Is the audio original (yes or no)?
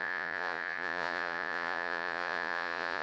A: no